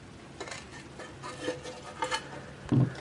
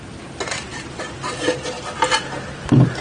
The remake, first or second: second